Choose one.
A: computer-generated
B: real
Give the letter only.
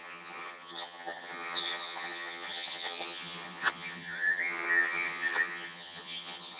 A